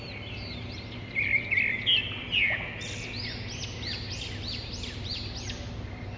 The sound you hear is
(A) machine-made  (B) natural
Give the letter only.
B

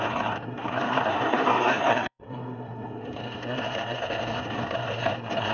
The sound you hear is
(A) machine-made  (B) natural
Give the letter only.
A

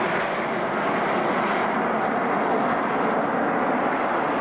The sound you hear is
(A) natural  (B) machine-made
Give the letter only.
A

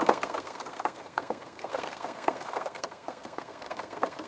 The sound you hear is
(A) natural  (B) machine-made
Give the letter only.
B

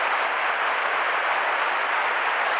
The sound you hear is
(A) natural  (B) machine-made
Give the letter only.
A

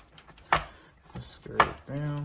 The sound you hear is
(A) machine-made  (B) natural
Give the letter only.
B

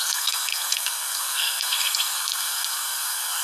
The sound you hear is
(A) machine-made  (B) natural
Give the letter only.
A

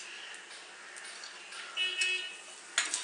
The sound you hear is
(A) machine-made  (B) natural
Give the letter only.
B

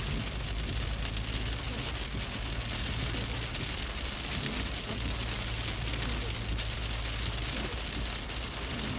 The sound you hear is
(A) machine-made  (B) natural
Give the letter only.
B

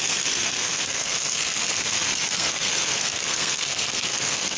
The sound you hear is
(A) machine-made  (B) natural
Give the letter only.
A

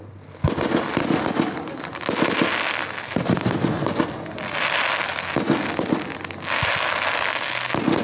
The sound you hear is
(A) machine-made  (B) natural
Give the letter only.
B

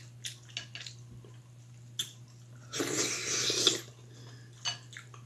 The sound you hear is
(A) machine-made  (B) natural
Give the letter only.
B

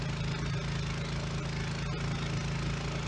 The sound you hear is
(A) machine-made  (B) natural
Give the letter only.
B